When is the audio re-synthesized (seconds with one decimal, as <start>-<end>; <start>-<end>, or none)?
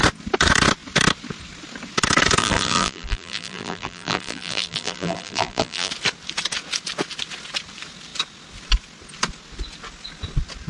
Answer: 2.4-5.9